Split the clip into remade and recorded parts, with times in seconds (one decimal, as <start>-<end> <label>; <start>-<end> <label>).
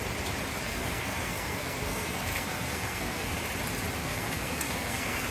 0.0-0.6 recorded; 0.6-3.4 remade; 3.4-4.0 recorded; 4.0-5.3 remade